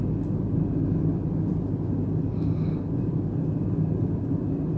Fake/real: real